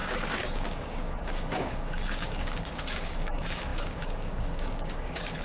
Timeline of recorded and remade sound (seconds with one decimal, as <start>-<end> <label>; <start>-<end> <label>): 0.0-5.4 remade